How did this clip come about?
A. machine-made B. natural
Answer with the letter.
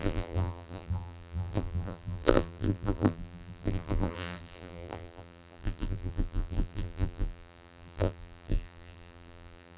A